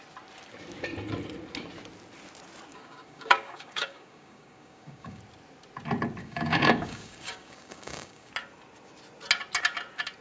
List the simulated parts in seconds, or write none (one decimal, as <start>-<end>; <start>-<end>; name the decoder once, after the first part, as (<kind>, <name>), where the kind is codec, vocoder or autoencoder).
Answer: 2.7-5.2 (codec, DAC); 6.2-8.3